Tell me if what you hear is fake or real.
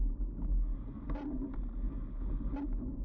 real